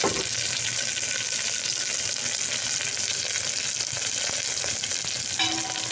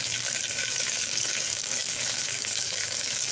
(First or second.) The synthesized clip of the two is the second